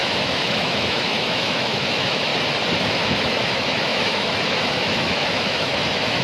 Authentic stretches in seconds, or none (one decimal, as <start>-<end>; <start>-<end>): 2.3-2.8